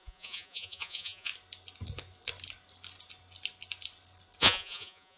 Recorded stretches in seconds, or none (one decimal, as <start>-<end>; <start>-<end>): 1.3-4.4